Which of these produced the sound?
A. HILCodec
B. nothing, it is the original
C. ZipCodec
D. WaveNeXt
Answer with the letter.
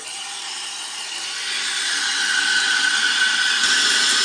B